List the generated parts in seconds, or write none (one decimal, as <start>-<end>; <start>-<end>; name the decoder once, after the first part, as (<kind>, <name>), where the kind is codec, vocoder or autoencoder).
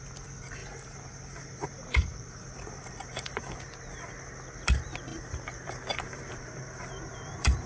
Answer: 0.6-3.6 (vocoder, BigVGAN v2); 5.1-7.7